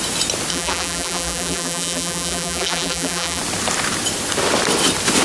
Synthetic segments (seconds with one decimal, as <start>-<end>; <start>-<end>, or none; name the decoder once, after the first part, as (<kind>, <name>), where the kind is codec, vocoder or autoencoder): 0.5-3.4 (vocoder, BigVGAN v2)